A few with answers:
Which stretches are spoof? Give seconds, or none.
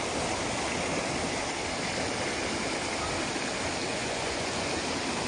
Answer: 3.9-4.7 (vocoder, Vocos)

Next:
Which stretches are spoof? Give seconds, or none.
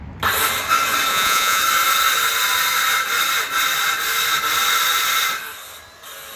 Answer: 1.1-1.6 (vocoder, Vocos)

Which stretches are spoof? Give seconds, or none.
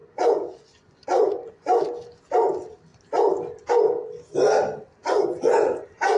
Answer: 0.0-1.8 (vocoder, Vocos); 5.0-5.8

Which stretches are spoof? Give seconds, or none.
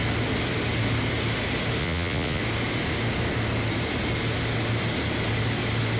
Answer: 1.8-2.4 (vocoder, Vocos)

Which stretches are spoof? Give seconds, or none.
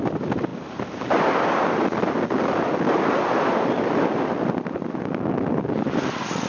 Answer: none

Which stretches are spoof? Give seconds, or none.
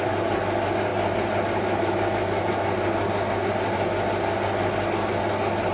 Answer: none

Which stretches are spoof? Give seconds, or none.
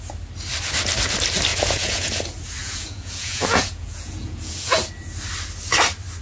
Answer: 1.5-2.2 (vocoder, Vocos); 2.6-4.8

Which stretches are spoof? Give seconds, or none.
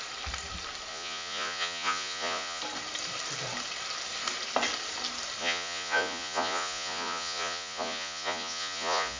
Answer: 0.9-2.6 (vocoder, Vocos); 5.4-9.2